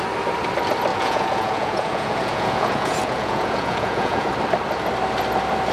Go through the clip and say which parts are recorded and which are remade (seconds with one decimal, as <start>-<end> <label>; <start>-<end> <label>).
0.0-0.9 recorded; 0.9-4.3 remade; 4.3-5.7 recorded